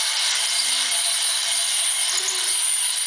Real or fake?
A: real